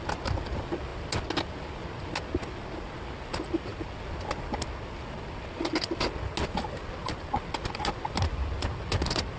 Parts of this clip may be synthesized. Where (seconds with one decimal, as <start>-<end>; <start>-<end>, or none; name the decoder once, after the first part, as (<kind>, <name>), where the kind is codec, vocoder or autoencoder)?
none